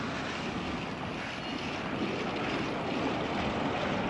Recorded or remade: recorded